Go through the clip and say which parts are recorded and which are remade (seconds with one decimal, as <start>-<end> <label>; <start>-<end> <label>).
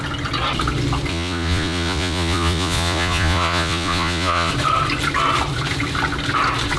0.0-1.1 recorded; 1.1-4.5 remade; 4.5-6.8 recorded